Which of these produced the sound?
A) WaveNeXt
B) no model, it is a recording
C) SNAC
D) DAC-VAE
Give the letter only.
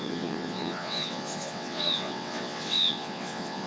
A